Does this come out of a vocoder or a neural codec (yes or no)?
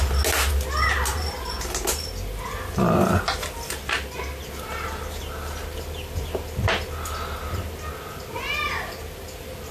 no